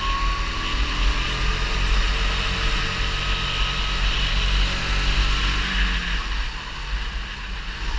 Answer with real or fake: real